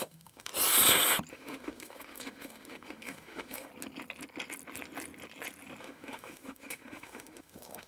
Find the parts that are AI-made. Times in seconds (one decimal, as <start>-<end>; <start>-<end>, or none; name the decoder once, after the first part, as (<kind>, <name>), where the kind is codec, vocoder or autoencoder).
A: 0.0-0.5 (autoencoder, DAC-VAE); 1.3-3.7; 5.8-7.9